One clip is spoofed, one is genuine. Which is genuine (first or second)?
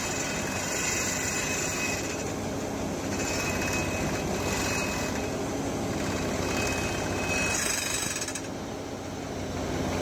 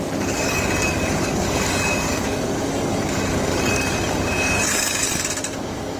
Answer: first